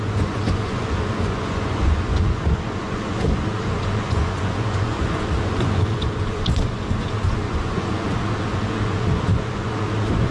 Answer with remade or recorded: remade